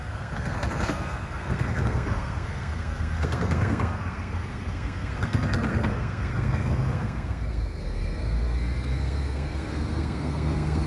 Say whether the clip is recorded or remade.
remade